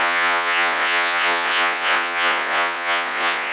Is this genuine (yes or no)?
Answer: no